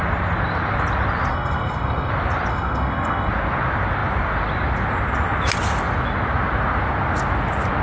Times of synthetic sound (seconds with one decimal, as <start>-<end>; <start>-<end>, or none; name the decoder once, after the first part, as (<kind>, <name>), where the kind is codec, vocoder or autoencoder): 1.3-2.1 (codec, SNAC); 2.5-3.3